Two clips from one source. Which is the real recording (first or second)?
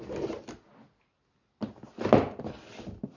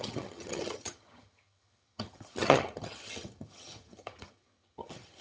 first